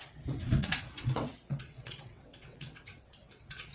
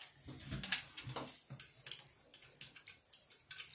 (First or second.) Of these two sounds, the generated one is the first